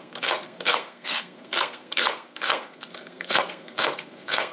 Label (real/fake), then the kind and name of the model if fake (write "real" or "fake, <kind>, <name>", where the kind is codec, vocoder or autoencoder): fake, codec, SNAC